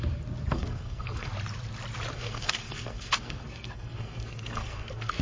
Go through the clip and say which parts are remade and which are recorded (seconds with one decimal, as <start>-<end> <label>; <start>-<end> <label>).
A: 0.0-0.5 recorded; 0.5-1.3 remade; 1.3-2.1 recorded; 2.1-5.2 remade